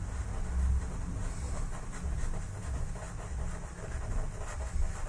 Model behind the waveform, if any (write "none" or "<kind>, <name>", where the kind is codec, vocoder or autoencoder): none